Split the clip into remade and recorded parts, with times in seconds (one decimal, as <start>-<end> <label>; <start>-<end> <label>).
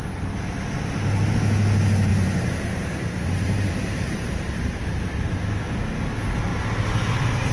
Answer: 0.0-2.1 recorded; 2.1-5.5 remade; 5.5-6.5 recorded; 6.5-7.5 remade